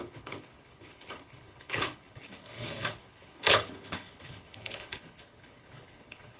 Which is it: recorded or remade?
remade